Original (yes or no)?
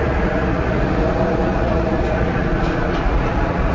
no